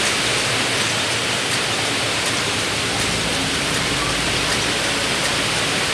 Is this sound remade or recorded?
recorded